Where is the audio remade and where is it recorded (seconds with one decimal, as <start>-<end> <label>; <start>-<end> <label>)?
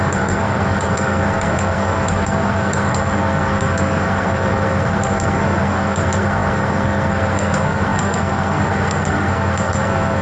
0.0-10.2 remade